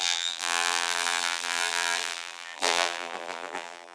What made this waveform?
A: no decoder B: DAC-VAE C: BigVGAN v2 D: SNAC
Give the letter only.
C